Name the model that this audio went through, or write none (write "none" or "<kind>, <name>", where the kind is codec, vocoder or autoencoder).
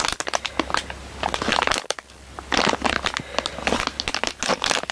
none